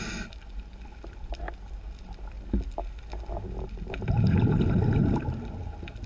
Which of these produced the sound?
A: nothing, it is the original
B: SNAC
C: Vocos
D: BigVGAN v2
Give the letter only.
A